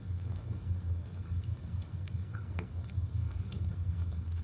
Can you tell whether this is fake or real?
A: fake